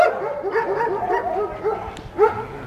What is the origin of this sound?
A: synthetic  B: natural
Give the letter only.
B